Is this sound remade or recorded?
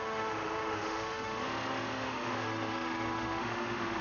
remade